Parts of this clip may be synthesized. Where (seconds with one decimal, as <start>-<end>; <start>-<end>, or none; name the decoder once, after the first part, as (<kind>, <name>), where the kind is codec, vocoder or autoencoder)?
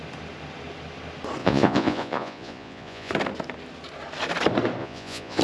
1.4-3.1 (vocoder, Vocos); 4.8-5.4